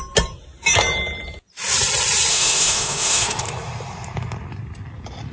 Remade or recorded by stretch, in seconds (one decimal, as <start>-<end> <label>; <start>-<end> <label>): 0.0-2.3 recorded; 2.3-3.4 remade; 3.4-5.3 recorded